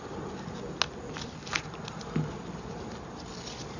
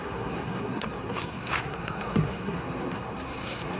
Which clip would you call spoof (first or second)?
second